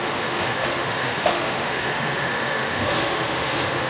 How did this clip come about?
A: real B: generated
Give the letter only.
B